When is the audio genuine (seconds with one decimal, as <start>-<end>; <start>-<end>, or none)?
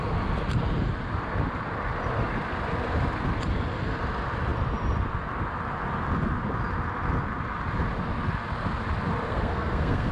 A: 0.0-9.3